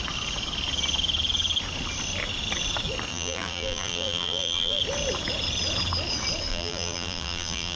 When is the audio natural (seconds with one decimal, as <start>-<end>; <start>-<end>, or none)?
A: 0.0-3.1; 4.8-6.5